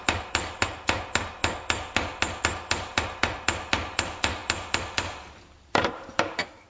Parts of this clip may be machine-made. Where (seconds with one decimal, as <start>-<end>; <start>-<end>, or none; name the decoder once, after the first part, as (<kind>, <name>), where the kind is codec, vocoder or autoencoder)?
0.0-1.4 (vocoder, BigVGAN v2); 2.4-4.4; 5.7-6.7

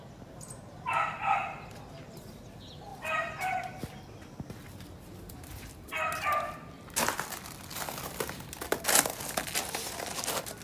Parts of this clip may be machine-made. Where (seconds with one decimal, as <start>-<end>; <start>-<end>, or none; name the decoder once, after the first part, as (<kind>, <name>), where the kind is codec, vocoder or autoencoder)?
2.9-3.7 (vocoder, BigVGAN v2)

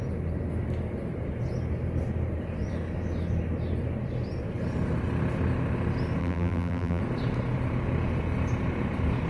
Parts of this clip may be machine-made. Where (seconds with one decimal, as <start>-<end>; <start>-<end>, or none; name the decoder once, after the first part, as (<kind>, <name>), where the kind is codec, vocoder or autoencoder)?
6.2-7.0 (vocoder, BigVGAN v2)

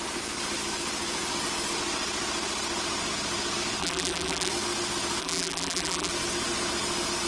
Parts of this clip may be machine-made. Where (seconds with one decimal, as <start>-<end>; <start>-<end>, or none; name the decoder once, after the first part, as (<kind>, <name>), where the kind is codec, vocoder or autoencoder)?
3.8-4.5 (vocoder, BigVGAN v2); 5.2-6.1

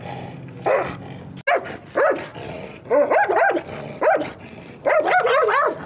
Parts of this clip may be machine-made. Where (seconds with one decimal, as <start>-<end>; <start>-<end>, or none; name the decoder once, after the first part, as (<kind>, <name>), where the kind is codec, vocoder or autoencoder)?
2.3-4.9 (vocoder, BigVGAN v2)

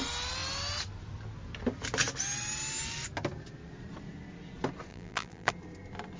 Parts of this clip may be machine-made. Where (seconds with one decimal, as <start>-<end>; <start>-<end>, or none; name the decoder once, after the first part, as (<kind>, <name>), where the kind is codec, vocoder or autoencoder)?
4.9-5.5 (vocoder, BigVGAN v2)

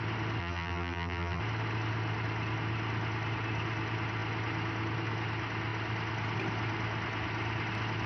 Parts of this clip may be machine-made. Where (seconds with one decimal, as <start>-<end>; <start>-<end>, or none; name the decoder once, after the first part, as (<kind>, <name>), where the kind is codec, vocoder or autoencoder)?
0.4-1.4 (vocoder, BigVGAN v2)